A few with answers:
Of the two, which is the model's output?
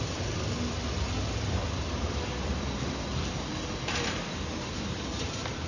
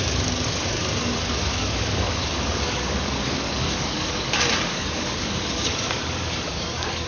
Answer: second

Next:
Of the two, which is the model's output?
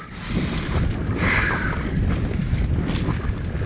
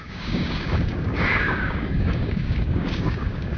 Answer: second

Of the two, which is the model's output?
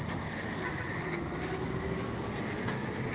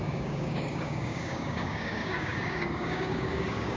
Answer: second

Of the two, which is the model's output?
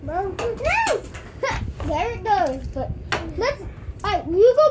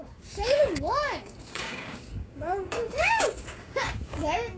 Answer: second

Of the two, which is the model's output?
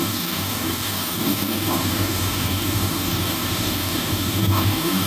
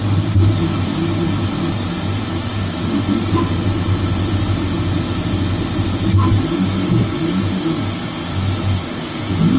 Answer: first